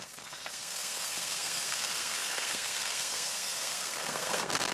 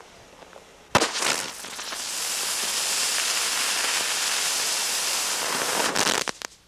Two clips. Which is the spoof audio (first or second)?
first